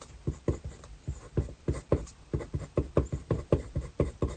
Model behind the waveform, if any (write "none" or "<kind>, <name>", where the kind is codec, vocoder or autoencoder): vocoder, BigVGAN v2